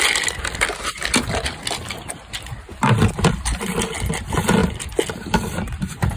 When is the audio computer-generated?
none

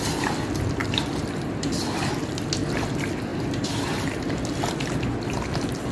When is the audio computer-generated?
0.8-2.2 (vocoder, BigVGAN v2); 3.3-5.1

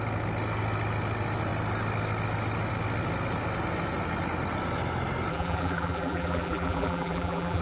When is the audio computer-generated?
5.3-7.6 (vocoder, BigVGAN v2)